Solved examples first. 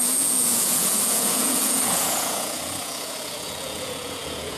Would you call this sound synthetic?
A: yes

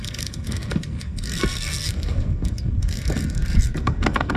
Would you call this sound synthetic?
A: yes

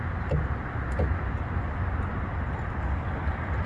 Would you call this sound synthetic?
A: no